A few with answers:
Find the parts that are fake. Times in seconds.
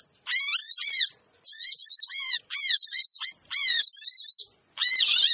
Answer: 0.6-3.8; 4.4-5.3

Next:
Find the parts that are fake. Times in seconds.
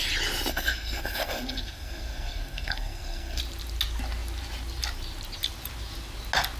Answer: 0.5-3.4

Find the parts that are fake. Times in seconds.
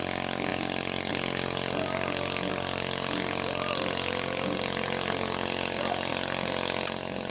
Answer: 0.5-1.1; 2.5-6.1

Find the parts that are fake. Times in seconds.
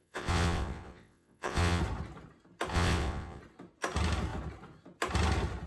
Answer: 0.0-1.8; 2.7-3.4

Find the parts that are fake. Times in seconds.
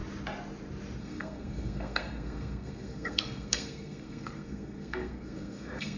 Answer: 1.0-6.0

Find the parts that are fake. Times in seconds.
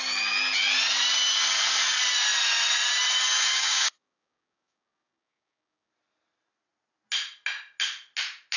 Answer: 3.5-5.9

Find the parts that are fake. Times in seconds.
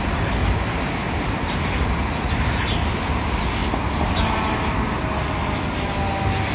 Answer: 0.4-1.3